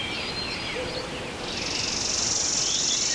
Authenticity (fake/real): real